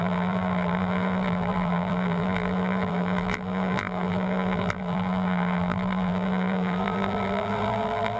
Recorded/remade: remade